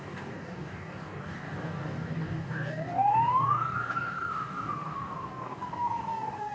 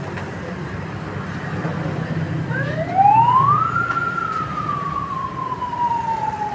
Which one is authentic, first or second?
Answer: second